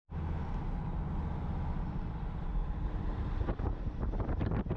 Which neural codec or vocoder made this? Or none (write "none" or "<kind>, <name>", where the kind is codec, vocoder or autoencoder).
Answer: none